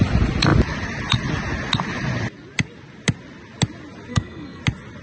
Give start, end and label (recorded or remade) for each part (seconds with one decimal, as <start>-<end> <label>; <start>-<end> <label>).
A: 0.0-4.1 recorded; 4.1-4.6 remade; 4.6-5.0 recorded